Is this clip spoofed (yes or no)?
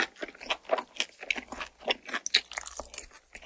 no